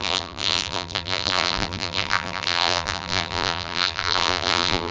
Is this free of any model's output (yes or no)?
no